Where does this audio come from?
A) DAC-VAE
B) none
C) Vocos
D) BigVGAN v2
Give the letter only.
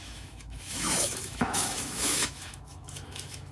A